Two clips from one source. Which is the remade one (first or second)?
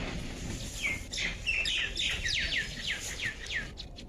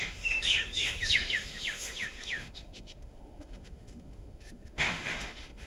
second